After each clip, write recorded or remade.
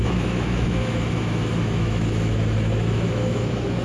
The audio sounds remade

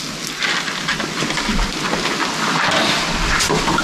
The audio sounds recorded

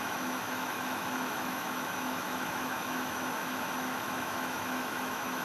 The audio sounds remade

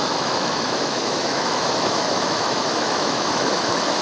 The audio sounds remade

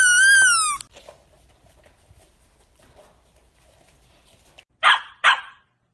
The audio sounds recorded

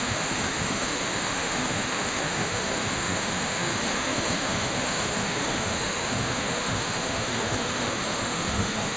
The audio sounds remade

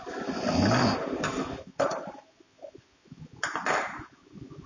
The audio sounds recorded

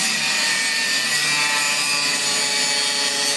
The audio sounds recorded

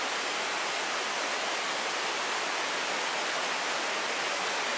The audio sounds recorded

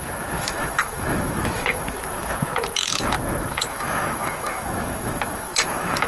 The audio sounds remade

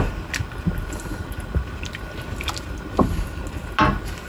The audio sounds recorded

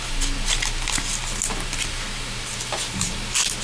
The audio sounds recorded